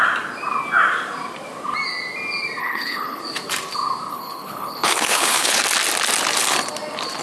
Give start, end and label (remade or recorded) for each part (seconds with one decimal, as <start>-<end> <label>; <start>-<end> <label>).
0.0-2.6 recorded; 2.6-3.2 remade; 3.2-4.1 recorded; 4.1-5.6 remade; 5.6-7.2 recorded